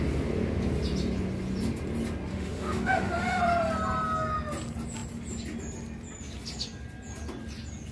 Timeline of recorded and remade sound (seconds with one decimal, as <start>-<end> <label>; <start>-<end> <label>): 0.0-2.3 recorded; 2.3-3.4 remade; 3.4-7.9 recorded